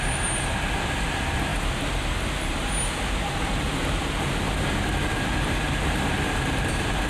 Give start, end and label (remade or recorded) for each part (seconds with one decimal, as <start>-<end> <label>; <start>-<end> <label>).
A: 0.0-7.1 recorded